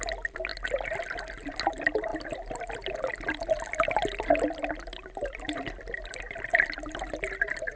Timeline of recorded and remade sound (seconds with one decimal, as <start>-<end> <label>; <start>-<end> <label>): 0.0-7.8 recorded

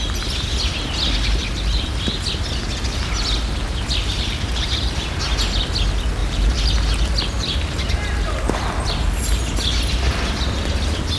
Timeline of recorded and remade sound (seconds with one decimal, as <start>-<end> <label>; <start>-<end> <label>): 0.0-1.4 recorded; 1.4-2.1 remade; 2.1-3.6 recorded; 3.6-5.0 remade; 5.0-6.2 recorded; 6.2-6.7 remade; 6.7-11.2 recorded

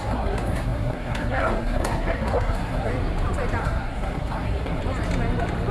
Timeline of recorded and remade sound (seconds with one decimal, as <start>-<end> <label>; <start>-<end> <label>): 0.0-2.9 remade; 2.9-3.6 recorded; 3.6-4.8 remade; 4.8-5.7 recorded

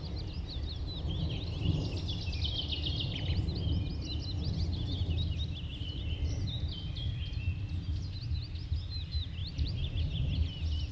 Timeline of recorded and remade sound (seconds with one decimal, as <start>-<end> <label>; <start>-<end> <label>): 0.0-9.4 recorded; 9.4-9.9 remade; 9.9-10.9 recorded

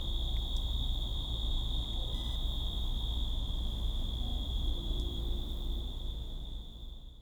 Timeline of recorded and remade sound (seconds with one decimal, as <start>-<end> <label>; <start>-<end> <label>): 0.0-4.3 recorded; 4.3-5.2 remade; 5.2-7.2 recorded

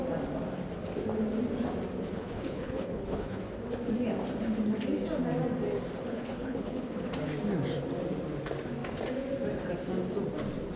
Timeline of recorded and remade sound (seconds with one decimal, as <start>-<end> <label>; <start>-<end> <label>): 0.0-2.1 recorded; 2.1-3.4 remade; 3.4-6.1 recorded; 6.1-7.1 remade; 7.1-10.8 recorded

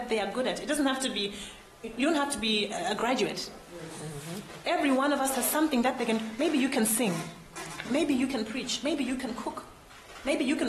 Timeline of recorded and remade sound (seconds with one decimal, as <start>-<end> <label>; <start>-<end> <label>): 0.0-10.7 recorded

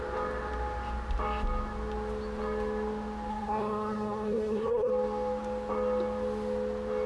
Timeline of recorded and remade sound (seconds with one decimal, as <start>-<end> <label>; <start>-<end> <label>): 0.0-3.3 recorded; 3.3-4.9 remade; 4.9-7.1 recorded